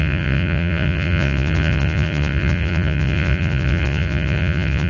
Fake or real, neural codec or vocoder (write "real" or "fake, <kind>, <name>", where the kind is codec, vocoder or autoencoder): fake, vocoder, Vocos